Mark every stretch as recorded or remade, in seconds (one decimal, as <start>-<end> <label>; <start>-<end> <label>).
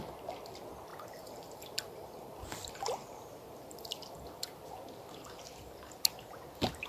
0.0-0.9 recorded; 0.9-4.6 remade; 4.6-6.9 recorded